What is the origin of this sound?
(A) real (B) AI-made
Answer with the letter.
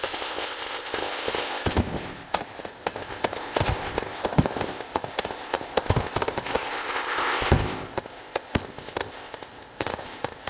B